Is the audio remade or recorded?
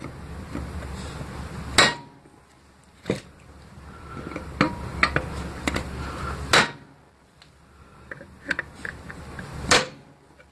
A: recorded